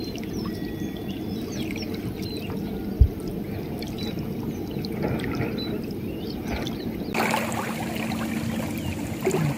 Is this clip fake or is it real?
real